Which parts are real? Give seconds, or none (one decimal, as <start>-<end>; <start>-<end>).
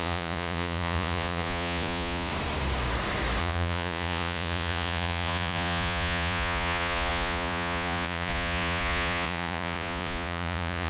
2.3-3.4